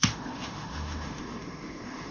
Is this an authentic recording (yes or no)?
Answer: no